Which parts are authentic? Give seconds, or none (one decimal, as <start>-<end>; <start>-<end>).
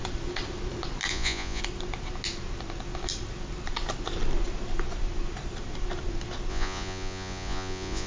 0.0-1.1; 1.6-6.5